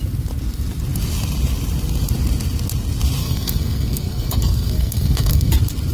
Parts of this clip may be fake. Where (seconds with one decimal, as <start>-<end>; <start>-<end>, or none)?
3.2-5.5